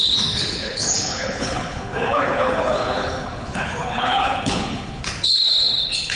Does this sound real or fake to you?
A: fake